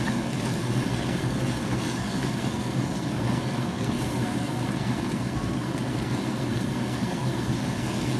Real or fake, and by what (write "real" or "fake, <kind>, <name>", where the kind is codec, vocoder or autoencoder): fake, codec, SNAC